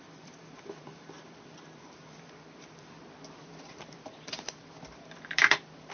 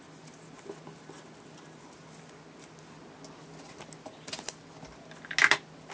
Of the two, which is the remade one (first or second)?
first